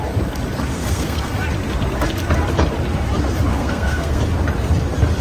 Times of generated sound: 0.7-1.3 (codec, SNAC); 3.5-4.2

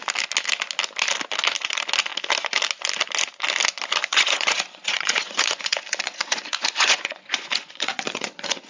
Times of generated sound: 4.1-8.7 (vocoder, Vocos)

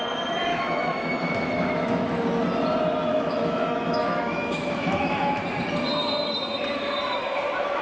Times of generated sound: 0.5-2.2 (autoencoder, DAC-VAE); 3.1-5.4